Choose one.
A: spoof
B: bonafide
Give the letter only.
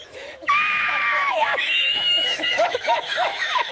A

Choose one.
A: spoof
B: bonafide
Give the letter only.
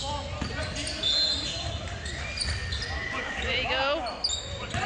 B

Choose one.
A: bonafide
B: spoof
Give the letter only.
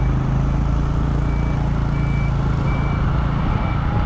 A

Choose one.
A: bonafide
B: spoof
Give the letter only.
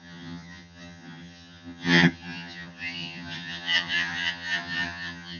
B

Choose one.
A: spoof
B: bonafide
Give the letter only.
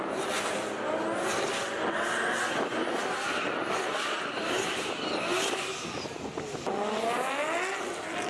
B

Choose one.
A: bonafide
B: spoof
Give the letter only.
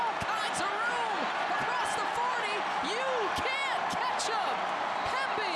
A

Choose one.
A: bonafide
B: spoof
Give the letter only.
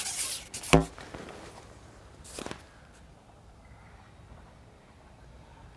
A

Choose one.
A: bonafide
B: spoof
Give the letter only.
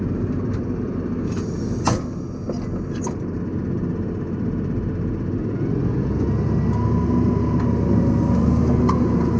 A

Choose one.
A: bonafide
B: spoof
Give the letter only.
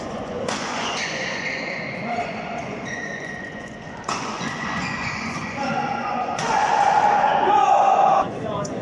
B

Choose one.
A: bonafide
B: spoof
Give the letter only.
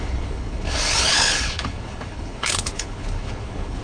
B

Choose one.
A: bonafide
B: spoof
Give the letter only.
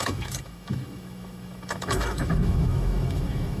B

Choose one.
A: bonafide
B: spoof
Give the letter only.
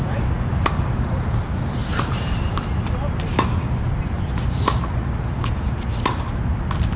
A